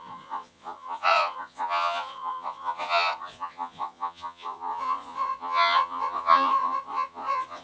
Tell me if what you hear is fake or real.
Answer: fake